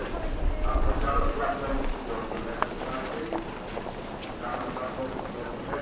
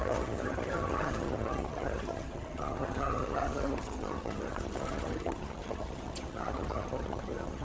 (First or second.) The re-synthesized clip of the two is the second